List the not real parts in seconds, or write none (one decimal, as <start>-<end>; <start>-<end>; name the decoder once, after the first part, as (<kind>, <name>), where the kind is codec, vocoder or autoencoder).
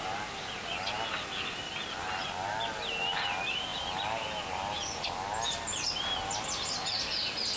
none